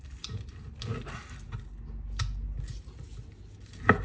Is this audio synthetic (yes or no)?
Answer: no